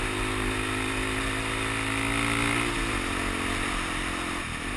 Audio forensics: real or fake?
real